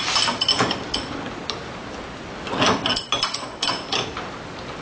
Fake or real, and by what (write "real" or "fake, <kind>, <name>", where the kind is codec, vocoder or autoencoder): real